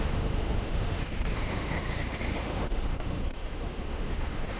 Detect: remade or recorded remade